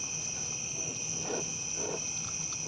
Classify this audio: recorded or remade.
recorded